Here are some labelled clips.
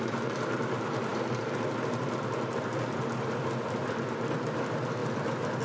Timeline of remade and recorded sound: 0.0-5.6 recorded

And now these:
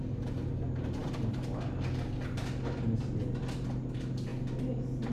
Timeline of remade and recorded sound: 0.0-5.1 recorded

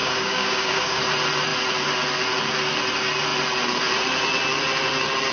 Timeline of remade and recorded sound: 0.0-1.0 remade; 1.0-5.3 recorded

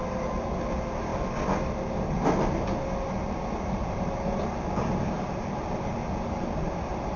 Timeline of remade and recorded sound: 0.0-7.2 recorded